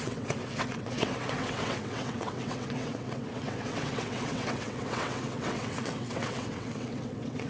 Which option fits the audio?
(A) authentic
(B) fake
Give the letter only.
B